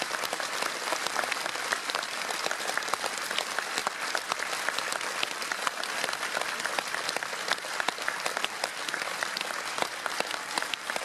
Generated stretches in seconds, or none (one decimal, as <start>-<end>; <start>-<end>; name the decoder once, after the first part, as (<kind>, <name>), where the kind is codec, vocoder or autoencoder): none